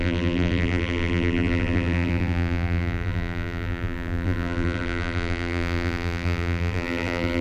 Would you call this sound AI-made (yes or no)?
yes